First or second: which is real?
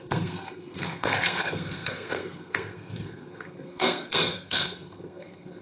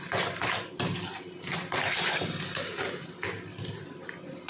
second